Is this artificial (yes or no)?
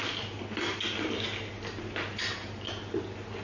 no